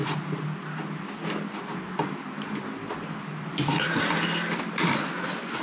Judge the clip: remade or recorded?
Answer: recorded